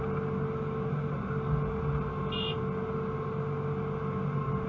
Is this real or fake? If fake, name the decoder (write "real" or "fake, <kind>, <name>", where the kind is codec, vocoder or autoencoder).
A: real